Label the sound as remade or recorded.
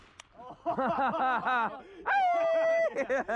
recorded